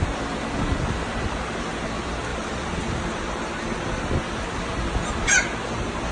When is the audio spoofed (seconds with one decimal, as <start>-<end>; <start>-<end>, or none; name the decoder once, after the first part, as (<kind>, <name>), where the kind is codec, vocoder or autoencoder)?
2.3-3.5 (vocoder, BigVGAN v2)